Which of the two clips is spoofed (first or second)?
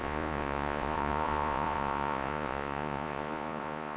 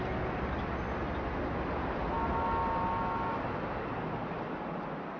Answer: first